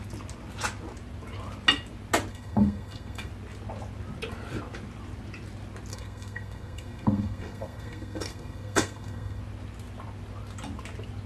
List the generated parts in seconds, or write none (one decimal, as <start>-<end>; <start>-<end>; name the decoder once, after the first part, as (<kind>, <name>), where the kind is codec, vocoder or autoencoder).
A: 2.3-3.3 (codec, SNAC); 5.9-9.4